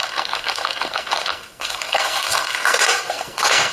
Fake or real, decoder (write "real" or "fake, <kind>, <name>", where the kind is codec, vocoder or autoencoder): fake, codec, SNAC